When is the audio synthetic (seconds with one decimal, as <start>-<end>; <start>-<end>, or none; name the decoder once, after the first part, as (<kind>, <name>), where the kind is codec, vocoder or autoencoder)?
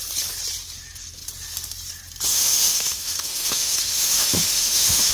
2.3-5.1 (autoencoder, DAC-VAE)